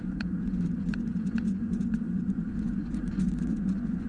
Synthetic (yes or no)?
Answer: yes